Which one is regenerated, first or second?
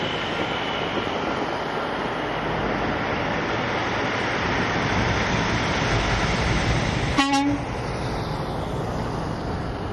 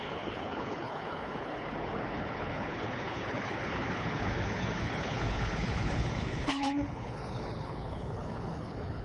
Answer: second